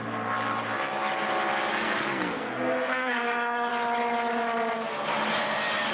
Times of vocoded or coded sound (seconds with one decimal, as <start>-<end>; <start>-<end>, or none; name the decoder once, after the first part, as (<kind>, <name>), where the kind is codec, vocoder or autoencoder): 1.7-3.7 (codec, SNAC)